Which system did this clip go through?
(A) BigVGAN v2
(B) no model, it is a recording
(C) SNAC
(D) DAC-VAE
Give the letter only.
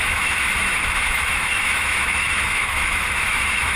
D